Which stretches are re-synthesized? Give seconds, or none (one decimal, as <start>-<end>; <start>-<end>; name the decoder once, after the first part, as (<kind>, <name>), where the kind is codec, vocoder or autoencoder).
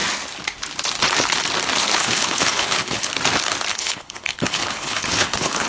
1.8-3.1 (codec, HILCodec); 3.7-5.7